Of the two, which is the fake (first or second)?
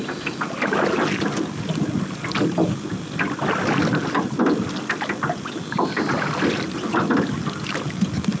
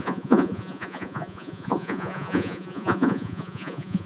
second